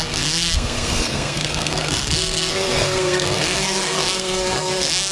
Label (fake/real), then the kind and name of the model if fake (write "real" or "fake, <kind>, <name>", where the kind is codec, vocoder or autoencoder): fake, codec, SNAC